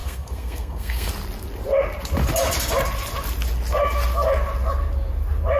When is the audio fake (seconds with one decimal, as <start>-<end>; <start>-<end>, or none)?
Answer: 0.0-1.1